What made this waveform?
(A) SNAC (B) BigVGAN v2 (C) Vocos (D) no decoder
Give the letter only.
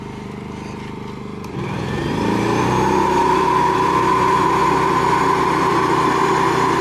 B